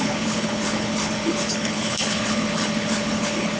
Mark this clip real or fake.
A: fake